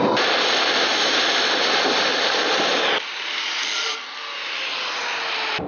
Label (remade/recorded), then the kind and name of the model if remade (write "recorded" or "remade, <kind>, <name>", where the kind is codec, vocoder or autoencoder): recorded